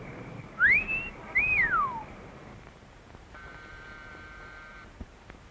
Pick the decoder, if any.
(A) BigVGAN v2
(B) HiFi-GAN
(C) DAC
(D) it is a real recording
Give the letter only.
A